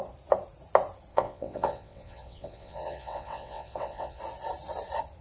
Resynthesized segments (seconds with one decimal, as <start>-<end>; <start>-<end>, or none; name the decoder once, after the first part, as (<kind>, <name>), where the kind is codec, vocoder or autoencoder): 1.1-4.2 (vocoder, WaveNeXt)